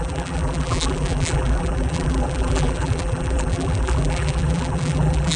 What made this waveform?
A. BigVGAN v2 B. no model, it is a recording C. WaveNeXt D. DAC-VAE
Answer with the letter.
A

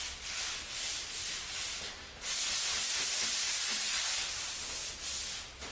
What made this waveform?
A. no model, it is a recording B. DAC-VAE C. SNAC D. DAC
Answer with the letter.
A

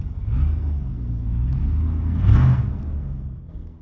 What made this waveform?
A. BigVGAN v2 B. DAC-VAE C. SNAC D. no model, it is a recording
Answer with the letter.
C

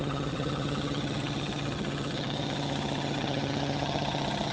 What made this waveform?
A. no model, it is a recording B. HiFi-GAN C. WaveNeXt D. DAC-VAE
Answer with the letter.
B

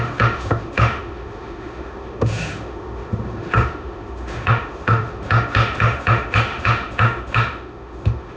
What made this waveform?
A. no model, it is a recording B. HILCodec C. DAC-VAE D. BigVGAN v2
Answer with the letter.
C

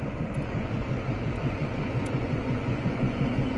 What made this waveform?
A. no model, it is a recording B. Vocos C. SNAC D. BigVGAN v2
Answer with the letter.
B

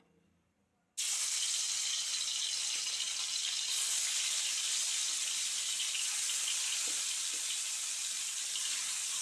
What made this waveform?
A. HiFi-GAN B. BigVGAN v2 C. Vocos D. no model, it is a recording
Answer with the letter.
D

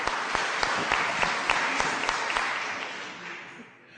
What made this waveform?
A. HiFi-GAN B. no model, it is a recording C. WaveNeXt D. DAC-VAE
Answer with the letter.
B